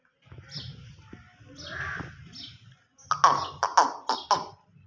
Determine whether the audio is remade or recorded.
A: recorded